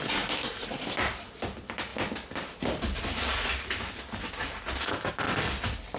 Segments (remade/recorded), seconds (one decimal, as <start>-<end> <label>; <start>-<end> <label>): 0.0-6.0 recorded